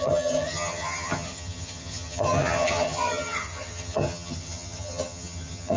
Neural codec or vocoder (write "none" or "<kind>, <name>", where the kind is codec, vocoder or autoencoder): vocoder, HiFi-GAN